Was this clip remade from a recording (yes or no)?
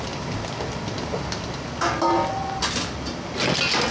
no